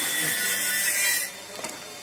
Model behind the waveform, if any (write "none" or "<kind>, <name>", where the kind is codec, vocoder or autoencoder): none